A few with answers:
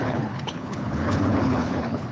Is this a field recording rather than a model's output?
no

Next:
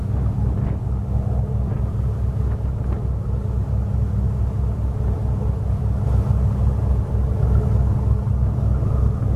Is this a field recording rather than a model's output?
yes